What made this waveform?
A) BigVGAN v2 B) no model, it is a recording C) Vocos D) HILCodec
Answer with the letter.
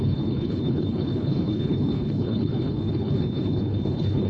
D